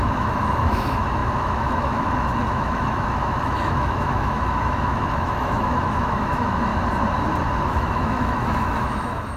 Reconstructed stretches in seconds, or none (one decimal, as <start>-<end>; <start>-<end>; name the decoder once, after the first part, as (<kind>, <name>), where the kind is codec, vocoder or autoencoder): 0.0-6.7 (autoencoder, DAC-VAE); 7.6-9.4